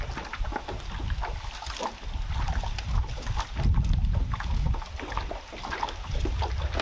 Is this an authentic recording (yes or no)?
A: yes